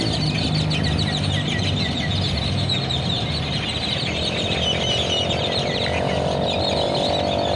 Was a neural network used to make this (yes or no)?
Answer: no